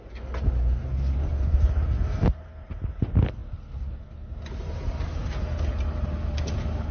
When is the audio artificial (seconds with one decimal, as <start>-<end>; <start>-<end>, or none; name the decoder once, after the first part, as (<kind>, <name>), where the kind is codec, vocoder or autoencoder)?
none